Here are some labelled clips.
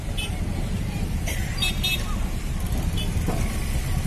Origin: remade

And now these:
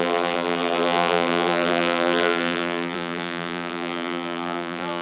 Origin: remade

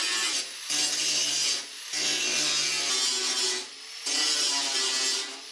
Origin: recorded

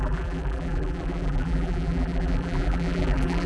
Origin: remade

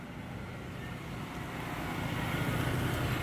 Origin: recorded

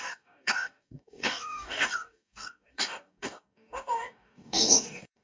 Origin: remade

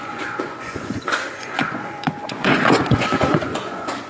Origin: remade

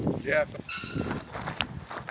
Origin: recorded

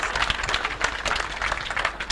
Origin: recorded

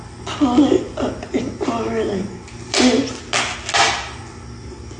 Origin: recorded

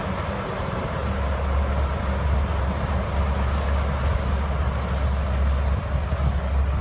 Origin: recorded